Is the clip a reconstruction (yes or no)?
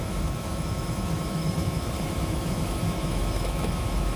yes